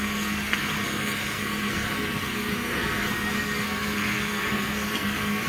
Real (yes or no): no